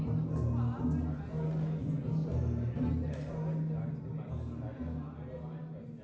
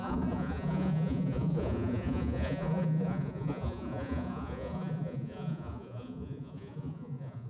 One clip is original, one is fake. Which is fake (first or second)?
second